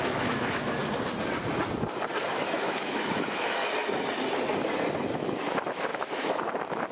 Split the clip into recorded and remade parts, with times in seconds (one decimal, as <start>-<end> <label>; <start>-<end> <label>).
0.0-0.8 remade; 0.8-2.3 recorded; 2.3-3.6 remade; 3.6-5.1 recorded; 5.1-6.9 remade